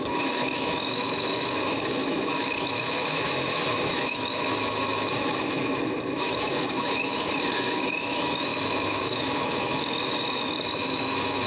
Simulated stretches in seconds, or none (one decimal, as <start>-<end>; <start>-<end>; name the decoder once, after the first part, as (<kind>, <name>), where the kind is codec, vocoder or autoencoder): 0.0-11.5 (autoencoder, DAC-VAE)